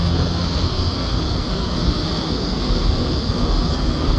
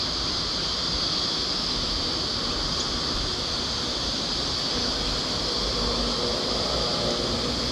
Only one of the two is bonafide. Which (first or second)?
second